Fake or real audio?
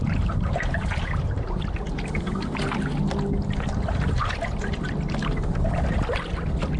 real